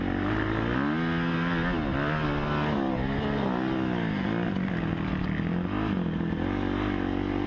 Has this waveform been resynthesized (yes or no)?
no